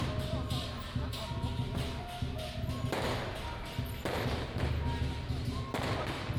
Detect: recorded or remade recorded